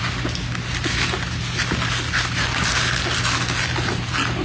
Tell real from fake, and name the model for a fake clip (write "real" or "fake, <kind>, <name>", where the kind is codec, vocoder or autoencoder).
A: real